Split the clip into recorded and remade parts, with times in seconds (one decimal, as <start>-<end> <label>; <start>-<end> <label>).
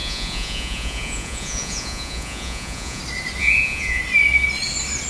0.0-3.0 remade; 3.0-3.4 recorded; 3.4-4.0 remade; 4.0-5.1 recorded